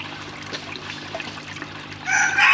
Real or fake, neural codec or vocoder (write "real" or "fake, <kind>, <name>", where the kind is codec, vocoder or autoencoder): real